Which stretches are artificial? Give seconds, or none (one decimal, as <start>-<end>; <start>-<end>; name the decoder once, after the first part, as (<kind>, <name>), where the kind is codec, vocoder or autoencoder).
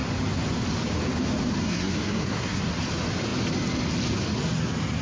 1.6-2.6 (codec, SNAC)